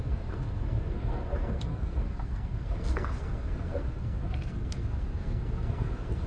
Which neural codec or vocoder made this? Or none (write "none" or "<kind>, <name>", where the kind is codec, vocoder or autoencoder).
codec, SNAC